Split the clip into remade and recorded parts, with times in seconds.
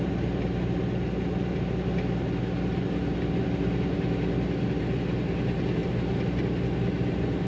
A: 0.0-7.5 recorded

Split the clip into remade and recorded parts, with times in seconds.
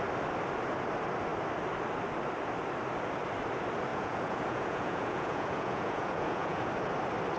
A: 0.0-3.9 recorded; 3.9-6.7 remade; 6.7-7.4 recorded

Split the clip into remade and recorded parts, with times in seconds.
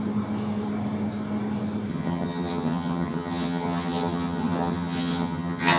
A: 0.0-1.9 recorded; 1.9-5.8 remade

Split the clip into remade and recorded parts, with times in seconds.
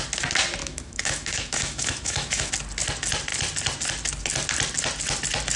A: 0.0-0.6 recorded; 0.6-2.5 remade; 2.5-5.6 recorded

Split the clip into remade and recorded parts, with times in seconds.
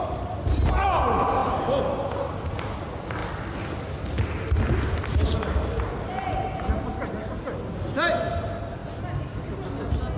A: 0.0-10.2 recorded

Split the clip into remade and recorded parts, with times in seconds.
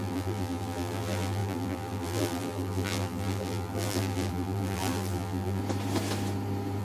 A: 0.0-5.6 remade; 5.6-6.8 recorded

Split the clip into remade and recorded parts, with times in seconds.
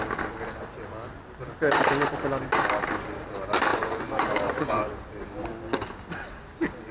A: 0.0-3.7 recorded; 3.7-4.9 remade; 4.9-6.9 recorded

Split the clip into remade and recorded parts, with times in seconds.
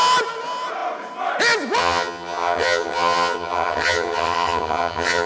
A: 0.0-1.8 recorded; 1.8-5.3 remade